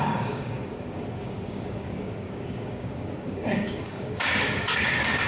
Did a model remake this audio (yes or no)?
yes